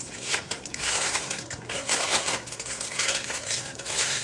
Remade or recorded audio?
remade